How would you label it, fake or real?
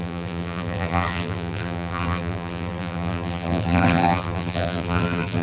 fake